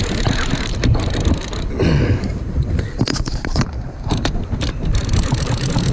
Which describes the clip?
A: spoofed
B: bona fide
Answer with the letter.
B